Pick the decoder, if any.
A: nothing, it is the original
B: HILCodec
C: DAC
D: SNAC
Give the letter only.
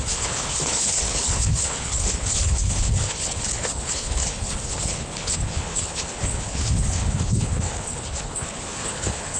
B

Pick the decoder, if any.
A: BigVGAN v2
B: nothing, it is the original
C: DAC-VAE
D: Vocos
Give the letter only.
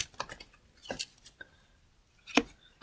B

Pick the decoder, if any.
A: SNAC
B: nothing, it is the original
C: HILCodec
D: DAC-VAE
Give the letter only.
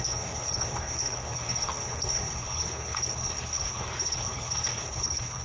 C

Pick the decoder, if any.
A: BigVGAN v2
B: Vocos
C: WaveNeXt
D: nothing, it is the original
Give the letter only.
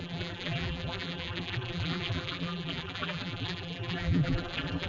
A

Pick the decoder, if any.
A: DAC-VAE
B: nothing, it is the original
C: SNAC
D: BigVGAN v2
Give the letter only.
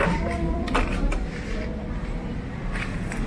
D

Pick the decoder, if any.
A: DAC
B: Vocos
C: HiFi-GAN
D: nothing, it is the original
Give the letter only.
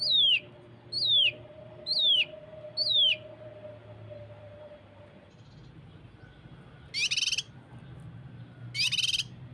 D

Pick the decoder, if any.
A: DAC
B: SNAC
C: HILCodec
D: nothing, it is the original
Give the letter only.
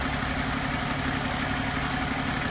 D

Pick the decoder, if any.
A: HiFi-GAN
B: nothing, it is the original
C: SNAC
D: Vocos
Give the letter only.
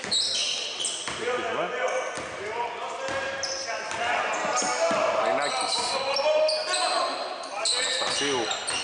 B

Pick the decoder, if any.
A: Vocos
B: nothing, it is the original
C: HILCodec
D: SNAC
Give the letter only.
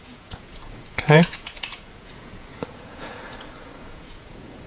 A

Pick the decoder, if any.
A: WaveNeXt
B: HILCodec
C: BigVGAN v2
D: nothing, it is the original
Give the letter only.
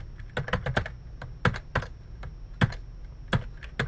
D